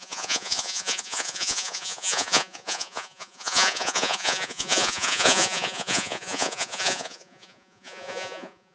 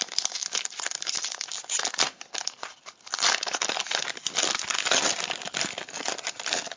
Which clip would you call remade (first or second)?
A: first